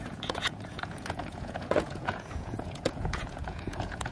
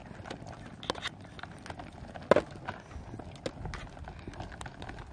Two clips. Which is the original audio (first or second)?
second